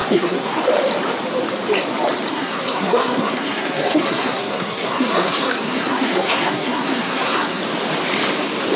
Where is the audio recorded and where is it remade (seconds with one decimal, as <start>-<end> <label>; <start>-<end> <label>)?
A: 0.0-0.6 remade; 0.6-2.3 recorded; 2.3-7.6 remade; 7.6-8.8 recorded